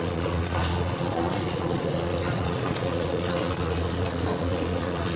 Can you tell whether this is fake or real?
fake